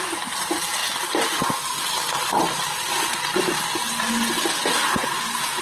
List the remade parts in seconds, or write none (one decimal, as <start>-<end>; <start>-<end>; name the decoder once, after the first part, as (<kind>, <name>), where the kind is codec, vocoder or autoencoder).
0.8-3.1 (vocoder, BigVGAN v2)